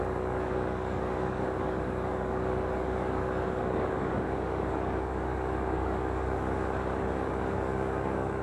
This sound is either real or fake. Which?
fake